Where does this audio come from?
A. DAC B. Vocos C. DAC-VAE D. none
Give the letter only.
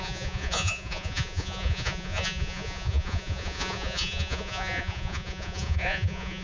B